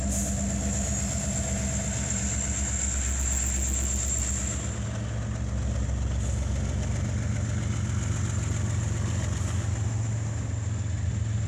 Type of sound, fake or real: real